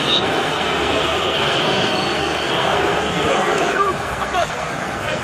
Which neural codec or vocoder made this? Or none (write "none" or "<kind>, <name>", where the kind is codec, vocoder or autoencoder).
codec, SNAC